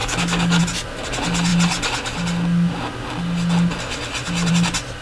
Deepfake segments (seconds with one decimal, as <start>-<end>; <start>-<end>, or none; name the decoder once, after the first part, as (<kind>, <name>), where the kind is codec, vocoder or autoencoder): 0.0-0.6 (codec, DAC)